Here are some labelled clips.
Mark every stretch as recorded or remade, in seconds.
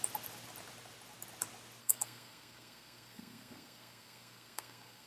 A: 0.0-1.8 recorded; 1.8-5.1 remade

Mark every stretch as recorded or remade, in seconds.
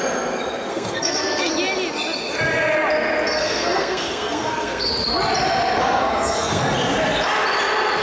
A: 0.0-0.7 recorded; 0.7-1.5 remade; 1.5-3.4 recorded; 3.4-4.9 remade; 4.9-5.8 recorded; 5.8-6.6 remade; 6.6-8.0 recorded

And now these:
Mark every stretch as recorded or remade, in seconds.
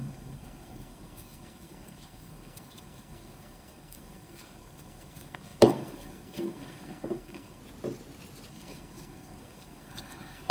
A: 0.0-7.6 remade; 7.6-8.5 recorded; 8.5-10.5 remade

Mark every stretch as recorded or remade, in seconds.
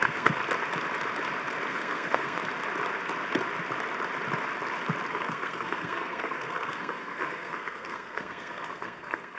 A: 0.0-0.4 remade; 0.4-1.7 recorded; 1.7-2.4 remade; 2.4-5.1 recorded; 5.1-9.4 remade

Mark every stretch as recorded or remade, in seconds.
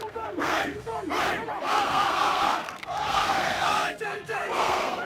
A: 0.0-0.9 remade; 0.9-1.6 recorded; 1.6-5.0 remade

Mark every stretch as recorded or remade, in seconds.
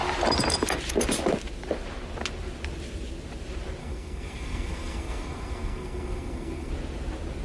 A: 0.0-3.8 recorded; 3.8-6.7 remade; 6.7-7.4 recorded